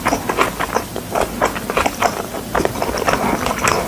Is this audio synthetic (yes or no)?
no